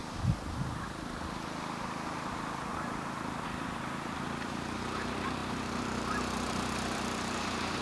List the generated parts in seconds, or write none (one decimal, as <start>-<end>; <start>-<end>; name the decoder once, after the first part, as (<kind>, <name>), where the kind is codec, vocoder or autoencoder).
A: 2.3-7.8 (vocoder, BigVGAN v2)